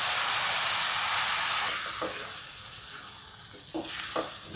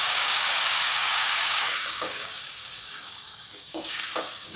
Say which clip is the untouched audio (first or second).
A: first